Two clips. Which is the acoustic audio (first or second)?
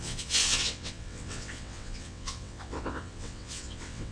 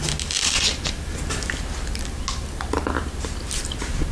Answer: second